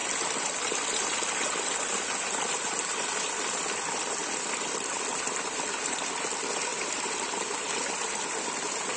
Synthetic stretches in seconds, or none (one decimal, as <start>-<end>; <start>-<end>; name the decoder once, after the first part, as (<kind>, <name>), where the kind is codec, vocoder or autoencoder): 0.0-2.0 (vocoder, BigVGAN v2); 4.2-5.7; 6.7-8.2